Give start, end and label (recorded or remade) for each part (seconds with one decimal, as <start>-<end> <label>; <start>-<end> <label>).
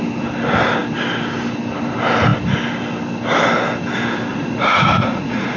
0.0-4.3 recorded; 4.3-5.6 remade